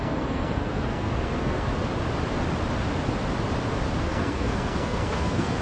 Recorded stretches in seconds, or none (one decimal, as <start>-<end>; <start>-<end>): 1.7-4.0